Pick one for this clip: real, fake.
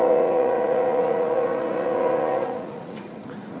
fake